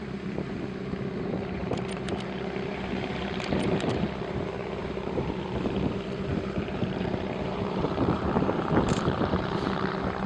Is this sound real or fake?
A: fake